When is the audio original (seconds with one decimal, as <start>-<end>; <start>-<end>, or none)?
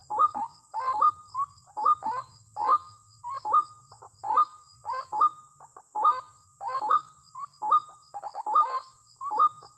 2.3-9.8